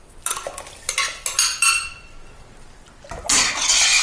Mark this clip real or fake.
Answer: real